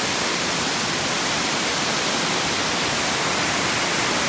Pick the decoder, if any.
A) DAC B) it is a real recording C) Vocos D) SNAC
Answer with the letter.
B